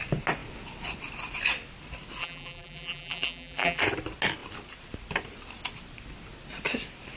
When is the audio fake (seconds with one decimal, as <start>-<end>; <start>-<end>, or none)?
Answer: 2.2-3.8